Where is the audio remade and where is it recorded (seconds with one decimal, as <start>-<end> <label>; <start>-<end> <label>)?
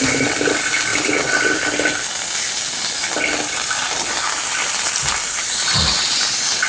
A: 0.0-6.7 recorded